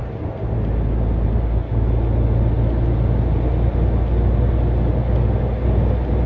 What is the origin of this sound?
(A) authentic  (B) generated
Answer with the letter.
A